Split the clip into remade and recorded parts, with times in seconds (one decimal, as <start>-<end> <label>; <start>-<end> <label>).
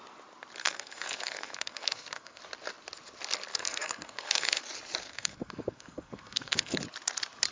0.0-0.6 recorded; 0.6-2.4 remade; 2.4-3.5 recorded; 3.5-4.6 remade; 4.6-5.0 recorded; 5.0-6.8 remade; 6.8-7.5 recorded